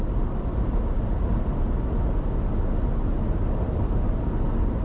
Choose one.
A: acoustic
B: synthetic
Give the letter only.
A